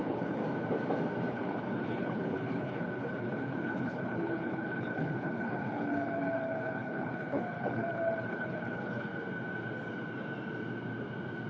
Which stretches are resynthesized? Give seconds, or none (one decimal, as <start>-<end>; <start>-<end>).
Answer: 0.0-0.4; 1.3-9.1